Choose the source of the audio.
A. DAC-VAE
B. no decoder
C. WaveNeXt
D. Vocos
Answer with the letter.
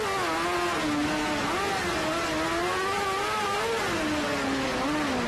B